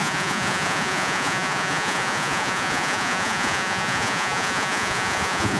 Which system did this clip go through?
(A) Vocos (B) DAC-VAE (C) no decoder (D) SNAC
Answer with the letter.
A